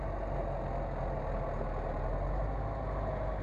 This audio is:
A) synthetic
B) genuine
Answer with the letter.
B